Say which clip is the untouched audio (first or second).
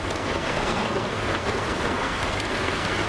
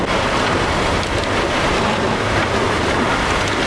second